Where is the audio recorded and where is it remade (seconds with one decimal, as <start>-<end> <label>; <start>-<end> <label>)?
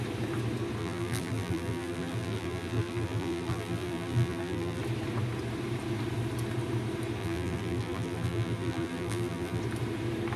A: 0.0-0.8 recorded; 0.8-4.8 remade; 4.8-7.2 recorded; 7.2-9.6 remade; 9.6-10.4 recorded